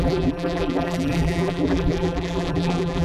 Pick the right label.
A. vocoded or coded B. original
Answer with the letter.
A